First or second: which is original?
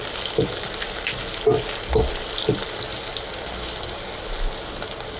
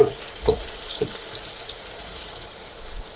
first